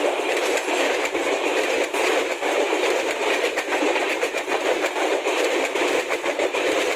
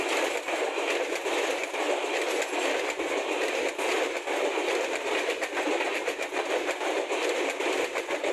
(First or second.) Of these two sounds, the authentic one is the second